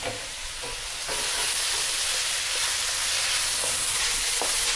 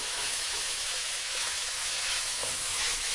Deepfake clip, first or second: second